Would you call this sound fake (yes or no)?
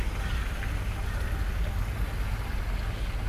no